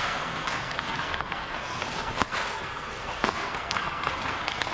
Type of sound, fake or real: fake